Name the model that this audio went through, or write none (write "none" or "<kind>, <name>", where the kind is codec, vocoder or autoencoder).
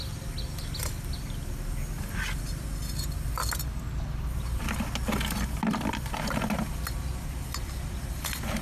none